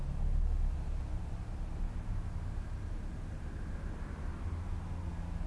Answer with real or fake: real